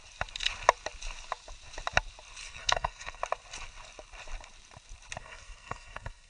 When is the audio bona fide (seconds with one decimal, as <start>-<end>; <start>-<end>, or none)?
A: 0.0-2.4; 3.2-5.2